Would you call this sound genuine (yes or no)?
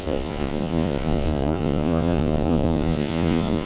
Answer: no